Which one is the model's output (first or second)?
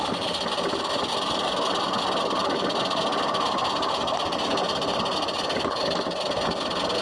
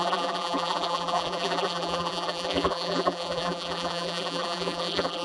second